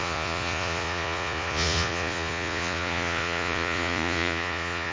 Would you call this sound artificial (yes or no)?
yes